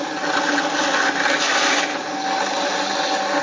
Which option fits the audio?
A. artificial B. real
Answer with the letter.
B